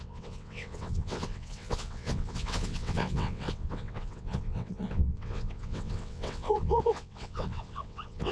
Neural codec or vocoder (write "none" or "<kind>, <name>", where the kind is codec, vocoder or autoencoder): vocoder, WaveNeXt